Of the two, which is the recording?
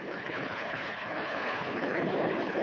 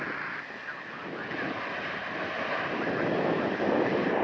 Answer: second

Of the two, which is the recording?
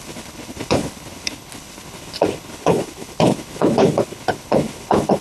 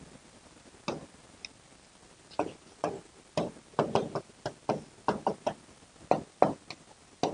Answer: second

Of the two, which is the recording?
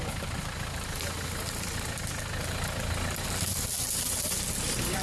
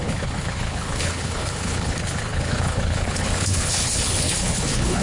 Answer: first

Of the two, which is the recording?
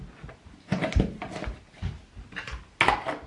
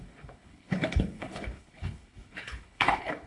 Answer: first